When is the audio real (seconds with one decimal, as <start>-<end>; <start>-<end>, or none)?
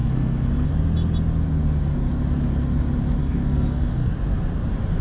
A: 0.7-3.2; 4.1-5.0